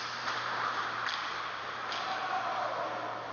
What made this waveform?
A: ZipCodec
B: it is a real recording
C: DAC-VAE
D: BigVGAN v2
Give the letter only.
D